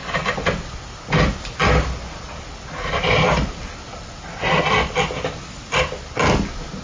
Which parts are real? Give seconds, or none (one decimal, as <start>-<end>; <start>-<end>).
0.0-6.8